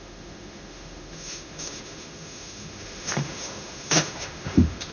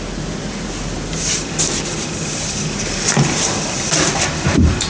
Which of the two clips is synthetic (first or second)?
first